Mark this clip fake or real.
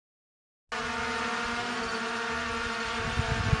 real